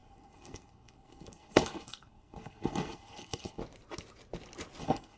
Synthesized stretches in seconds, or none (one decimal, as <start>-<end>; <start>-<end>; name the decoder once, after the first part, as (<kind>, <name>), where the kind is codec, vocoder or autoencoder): 0.0-3.6 (codec, SNAC); 4.8-5.2